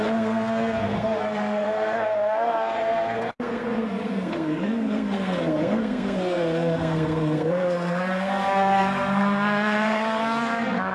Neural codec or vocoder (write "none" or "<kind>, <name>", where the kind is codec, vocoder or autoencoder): codec, SNAC